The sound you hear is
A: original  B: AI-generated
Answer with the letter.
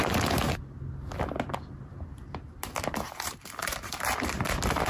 A